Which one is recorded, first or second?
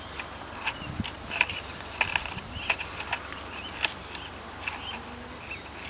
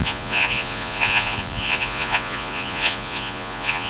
first